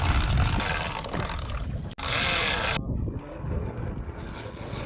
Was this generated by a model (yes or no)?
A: no